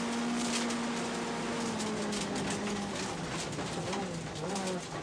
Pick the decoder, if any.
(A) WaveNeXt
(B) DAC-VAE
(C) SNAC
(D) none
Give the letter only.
D